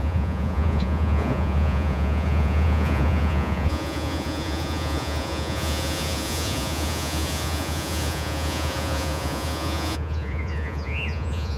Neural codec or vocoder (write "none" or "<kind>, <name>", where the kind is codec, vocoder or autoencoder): vocoder, Vocos